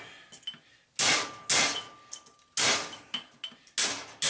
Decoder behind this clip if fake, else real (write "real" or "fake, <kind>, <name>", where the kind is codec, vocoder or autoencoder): real